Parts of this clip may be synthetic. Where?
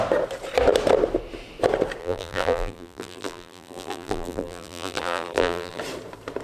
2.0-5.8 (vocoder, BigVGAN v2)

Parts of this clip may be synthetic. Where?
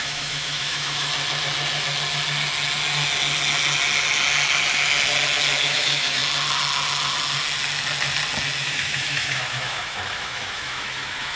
0.0-1.1 (autoencoder, DAC-VAE); 5.6-6.2; 8.6-11.4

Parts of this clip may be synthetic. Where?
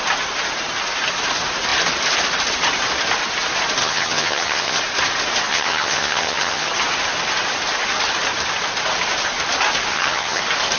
3.8-4.8 (vocoder, HiFi-GAN); 5.5-6.7; 9.9-10.4